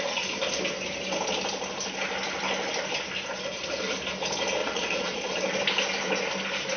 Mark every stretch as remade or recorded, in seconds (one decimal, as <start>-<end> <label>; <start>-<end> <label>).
0.0-4.6 recorded; 4.6-5.3 remade; 5.3-6.8 recorded